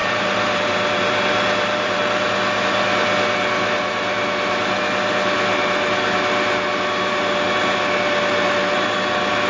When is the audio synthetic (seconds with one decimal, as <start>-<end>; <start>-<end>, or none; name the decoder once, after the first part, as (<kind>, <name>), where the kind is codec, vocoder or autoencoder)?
0.0-2.0 (vocoder, BigVGAN v2)